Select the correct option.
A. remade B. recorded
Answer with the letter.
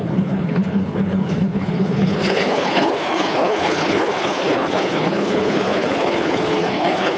A